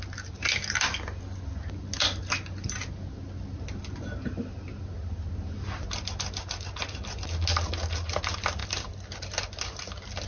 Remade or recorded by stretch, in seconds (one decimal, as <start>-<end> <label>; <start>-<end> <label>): 0.0-10.3 recorded